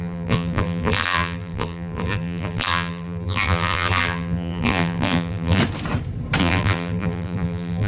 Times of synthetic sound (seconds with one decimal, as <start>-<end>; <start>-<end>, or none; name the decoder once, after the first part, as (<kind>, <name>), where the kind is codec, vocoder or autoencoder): 0.0-5.6 (vocoder, BigVGAN v2); 6.4-7.9